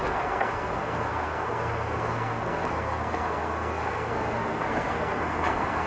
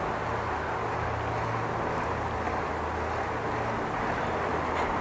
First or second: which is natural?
second